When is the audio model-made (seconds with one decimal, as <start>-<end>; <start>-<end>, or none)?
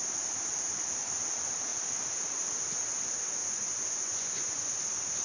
3.4-4.8